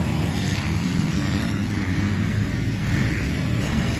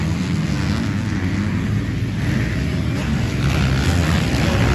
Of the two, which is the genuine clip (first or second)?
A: second